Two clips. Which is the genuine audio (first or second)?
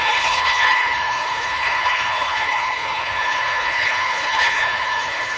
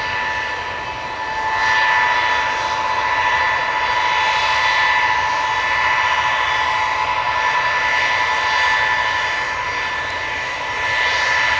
second